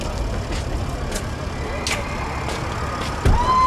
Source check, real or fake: real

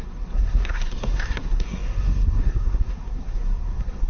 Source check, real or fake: fake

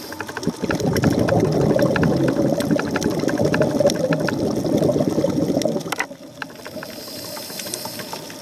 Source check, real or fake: real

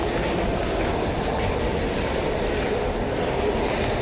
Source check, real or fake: fake